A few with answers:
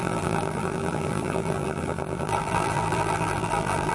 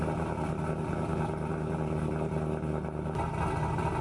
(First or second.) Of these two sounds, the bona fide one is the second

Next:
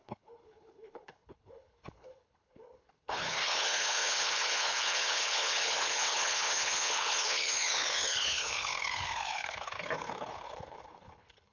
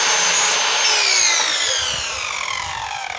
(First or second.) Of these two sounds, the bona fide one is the second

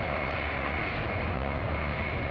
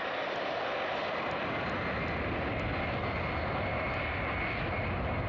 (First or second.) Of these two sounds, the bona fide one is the second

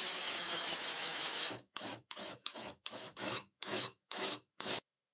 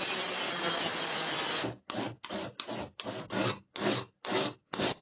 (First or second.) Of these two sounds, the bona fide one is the second